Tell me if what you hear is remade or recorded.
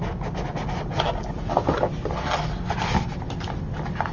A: recorded